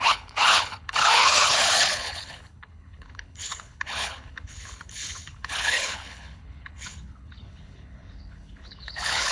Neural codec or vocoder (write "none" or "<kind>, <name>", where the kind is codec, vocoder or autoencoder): codec, HILCodec